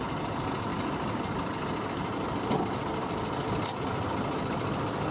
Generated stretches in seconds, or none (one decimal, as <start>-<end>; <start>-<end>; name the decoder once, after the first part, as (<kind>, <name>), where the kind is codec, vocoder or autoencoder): none